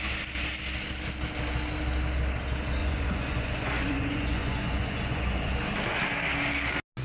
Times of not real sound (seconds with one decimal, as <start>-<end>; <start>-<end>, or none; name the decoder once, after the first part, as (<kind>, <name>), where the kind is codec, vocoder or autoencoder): 2.8-5.5 (vocoder, Vocos)

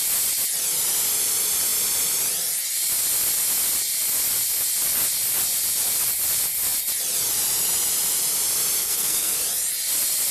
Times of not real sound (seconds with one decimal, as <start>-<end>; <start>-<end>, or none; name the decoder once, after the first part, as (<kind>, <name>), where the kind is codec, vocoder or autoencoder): 8.8-9.4 (codec, SNAC)

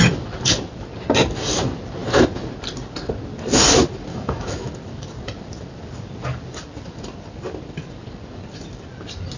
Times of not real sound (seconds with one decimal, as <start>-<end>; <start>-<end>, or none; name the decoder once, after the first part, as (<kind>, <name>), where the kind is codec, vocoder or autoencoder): 4.1-4.7 (autoencoder, DAC-VAE)